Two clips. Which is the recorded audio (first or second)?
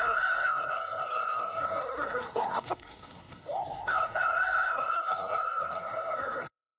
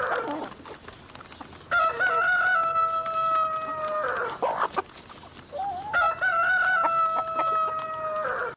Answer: second